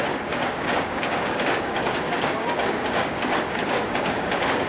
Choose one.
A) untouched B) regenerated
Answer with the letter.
B